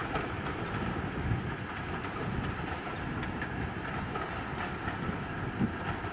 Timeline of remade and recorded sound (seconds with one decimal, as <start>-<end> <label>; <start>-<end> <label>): 0.0-6.1 recorded